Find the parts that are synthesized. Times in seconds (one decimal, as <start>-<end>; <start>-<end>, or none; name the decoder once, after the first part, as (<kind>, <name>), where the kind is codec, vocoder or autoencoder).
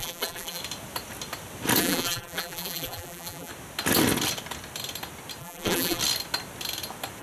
0.0-0.6 (vocoder, BigVGAN v2); 1.8-3.5; 5.4-6.0